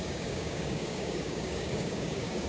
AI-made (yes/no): yes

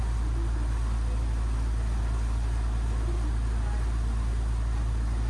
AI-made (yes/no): no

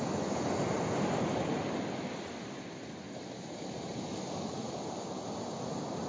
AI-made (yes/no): no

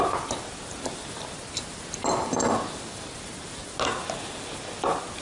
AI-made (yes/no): no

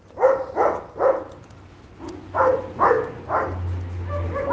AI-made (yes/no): no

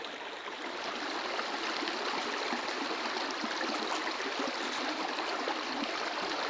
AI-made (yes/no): no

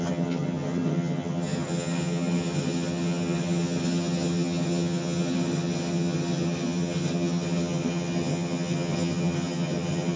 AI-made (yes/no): yes